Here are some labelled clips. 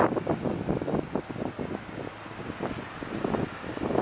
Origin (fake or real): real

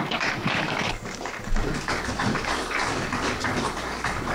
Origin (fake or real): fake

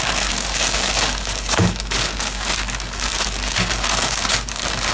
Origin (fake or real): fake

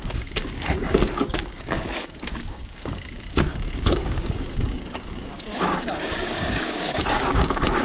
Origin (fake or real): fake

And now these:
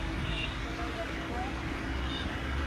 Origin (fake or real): fake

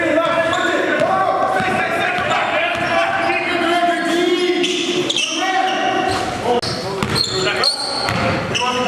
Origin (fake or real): real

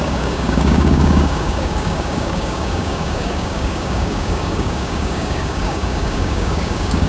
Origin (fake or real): fake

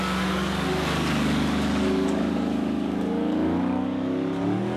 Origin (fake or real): fake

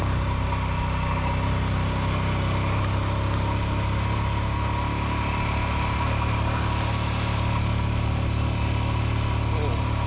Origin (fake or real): real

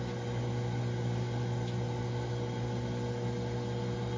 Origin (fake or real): real